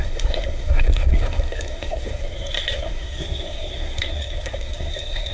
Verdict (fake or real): fake